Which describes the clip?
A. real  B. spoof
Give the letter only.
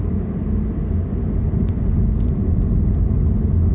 A